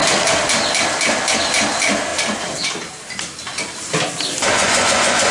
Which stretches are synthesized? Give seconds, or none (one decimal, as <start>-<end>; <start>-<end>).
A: 4.5-5.3